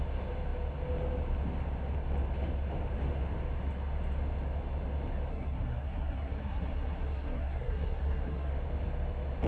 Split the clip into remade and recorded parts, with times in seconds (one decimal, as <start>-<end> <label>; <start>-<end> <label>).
0.0-5.3 recorded; 5.3-8.5 remade; 8.5-9.5 recorded